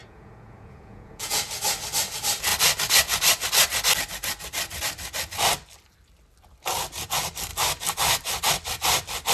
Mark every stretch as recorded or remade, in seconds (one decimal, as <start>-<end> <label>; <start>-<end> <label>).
0.0-1.4 remade; 1.4-9.3 recorded